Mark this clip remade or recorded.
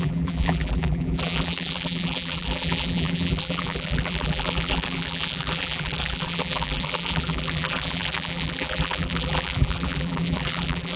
remade